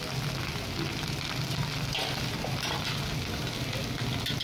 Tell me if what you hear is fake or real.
real